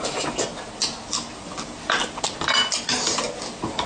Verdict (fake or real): real